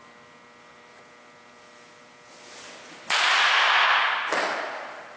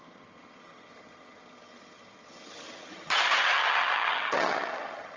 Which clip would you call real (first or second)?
first